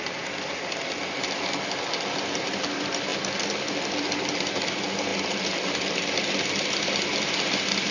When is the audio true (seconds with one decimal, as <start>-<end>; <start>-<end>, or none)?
0.0-7.9

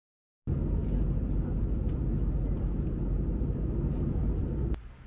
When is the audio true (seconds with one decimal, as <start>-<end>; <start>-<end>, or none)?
0.0-5.1

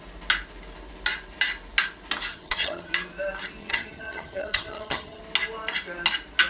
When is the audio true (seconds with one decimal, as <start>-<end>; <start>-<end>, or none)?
0.0-2.3; 2.9-3.6; 5.2-6.5

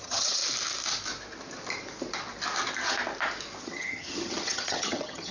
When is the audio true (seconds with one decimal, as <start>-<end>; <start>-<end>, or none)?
0.4-3.6

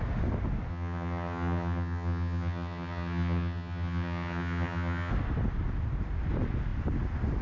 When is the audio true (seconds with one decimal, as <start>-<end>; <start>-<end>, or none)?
0.0-0.7; 5.1-7.4

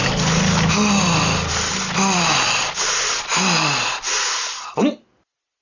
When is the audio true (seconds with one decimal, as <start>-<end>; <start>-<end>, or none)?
0.0-5.6

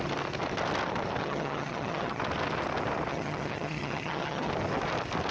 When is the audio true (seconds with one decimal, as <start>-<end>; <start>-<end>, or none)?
0.0-1.2; 2.2-3.1; 4.5-5.3